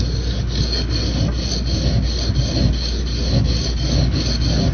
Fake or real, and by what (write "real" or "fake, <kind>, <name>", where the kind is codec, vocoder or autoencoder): real